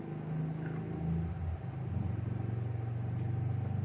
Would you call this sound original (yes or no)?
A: yes